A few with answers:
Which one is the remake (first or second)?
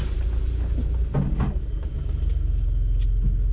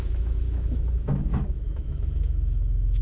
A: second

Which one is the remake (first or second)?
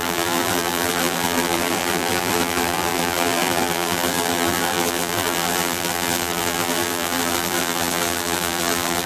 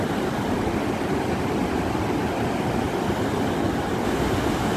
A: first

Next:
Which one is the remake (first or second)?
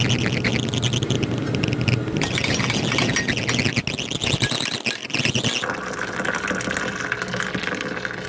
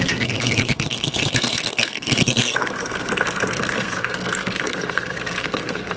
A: second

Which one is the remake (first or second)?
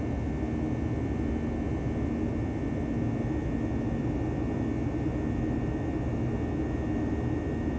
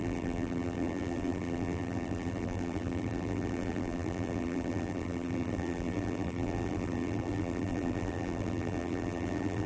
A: second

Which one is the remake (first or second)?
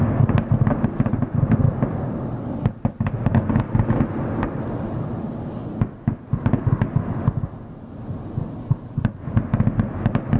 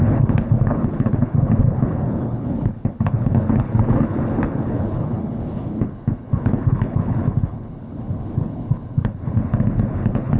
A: second